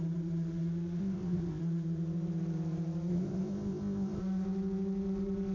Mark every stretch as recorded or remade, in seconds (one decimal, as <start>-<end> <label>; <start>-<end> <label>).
0.0-1.0 recorded; 1.0-1.6 remade; 1.6-3.1 recorded; 3.1-4.2 remade; 4.2-5.5 recorded